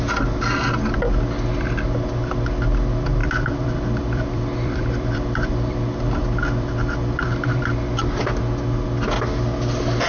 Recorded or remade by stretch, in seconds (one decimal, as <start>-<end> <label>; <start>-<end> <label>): 0.0-3.2 recorded; 3.2-7.4 remade; 7.4-10.1 recorded